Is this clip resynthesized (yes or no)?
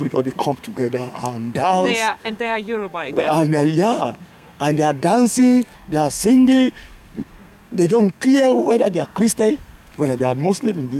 yes